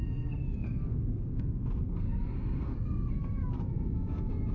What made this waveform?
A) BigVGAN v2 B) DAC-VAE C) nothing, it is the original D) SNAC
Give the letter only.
D